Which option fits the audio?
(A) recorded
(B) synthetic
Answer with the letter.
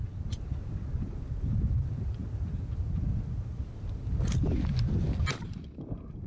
A